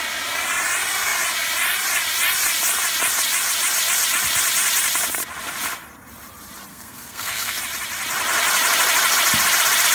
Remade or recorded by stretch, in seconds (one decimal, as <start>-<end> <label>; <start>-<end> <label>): 0.0-6.7 recorded; 6.7-7.6 remade; 7.6-9.9 recorded